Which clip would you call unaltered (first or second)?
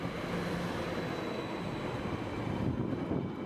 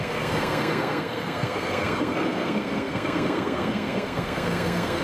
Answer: first